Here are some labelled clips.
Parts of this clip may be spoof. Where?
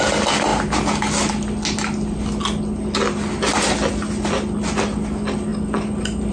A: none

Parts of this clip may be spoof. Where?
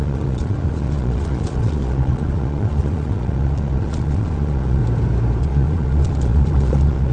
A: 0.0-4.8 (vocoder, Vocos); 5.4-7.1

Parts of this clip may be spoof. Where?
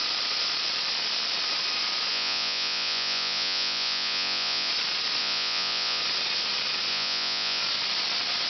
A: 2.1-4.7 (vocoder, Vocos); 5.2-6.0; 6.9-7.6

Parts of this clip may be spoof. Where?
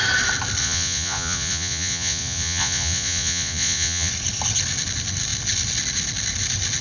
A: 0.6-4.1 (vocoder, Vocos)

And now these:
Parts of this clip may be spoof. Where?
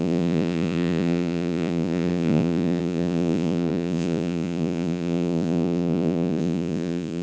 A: 0.0-7.2 (vocoder, Vocos)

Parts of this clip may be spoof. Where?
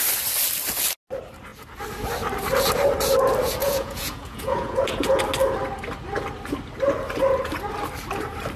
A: 3.6-5.2 (vocoder, Vocos)